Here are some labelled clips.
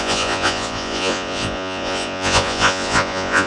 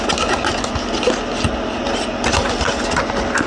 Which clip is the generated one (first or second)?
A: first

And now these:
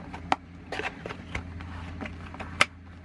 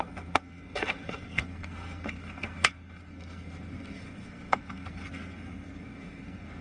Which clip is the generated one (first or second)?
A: second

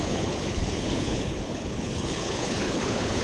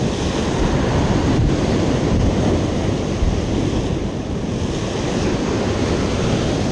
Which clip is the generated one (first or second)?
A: first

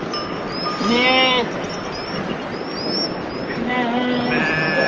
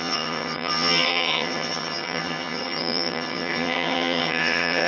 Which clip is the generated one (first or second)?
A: second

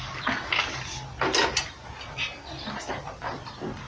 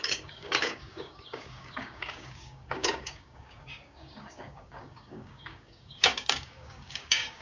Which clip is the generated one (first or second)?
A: second